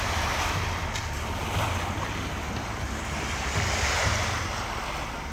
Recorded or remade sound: recorded